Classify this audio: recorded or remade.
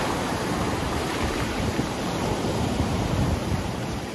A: remade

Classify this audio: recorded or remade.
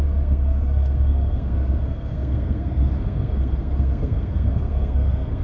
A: remade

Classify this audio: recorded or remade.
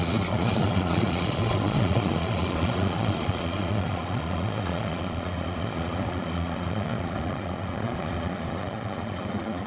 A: remade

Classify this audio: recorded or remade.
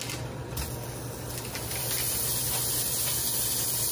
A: recorded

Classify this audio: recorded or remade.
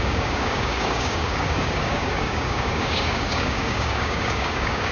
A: remade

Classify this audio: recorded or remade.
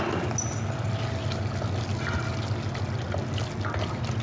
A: recorded